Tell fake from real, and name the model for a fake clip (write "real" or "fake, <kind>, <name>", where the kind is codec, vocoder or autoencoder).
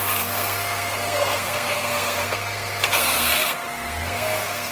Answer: fake, codec, SNAC